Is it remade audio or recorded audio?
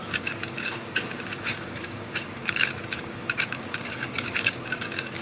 remade